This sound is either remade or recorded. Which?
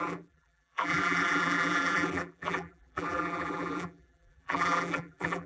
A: remade